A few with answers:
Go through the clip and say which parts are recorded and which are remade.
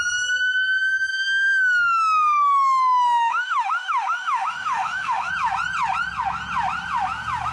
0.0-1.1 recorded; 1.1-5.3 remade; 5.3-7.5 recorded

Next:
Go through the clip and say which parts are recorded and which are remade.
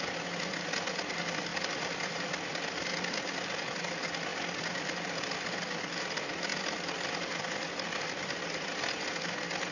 0.0-1.5 recorded; 1.5-2.6 remade; 2.6-4.3 recorded; 4.3-5.4 remade; 5.4-9.7 recorded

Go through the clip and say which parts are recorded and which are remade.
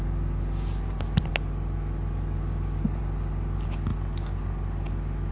0.0-5.3 recorded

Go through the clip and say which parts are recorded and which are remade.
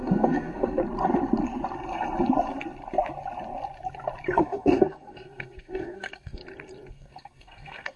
0.0-0.8 remade; 0.8-4.4 recorded; 4.4-6.4 remade; 6.4-6.9 recorded; 6.9-8.0 remade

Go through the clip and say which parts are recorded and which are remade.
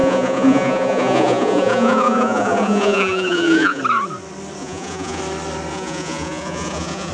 0.0-3.8 remade; 3.8-4.6 recorded; 4.6-5.2 remade; 5.2-5.7 recorded; 5.7-7.1 remade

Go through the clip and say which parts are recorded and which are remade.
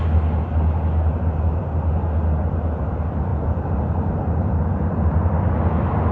0.0-3.3 recorded; 3.3-4.5 remade; 4.5-6.1 recorded